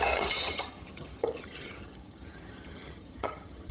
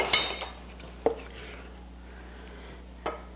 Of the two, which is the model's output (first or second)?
first